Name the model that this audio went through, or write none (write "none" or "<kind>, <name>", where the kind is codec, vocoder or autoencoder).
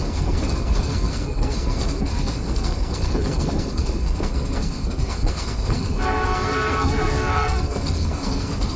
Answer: codec, SNAC